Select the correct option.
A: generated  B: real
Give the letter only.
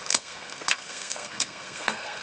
A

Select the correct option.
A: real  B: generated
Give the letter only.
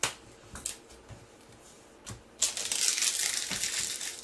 A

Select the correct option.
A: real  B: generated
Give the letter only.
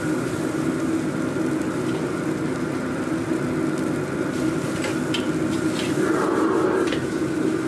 A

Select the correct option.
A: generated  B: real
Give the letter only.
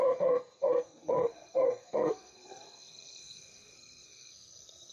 A